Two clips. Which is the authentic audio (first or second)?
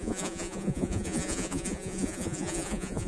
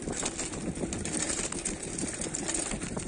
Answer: second